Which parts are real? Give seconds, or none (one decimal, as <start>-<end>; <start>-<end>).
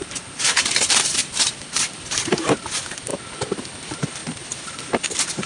0.0-5.5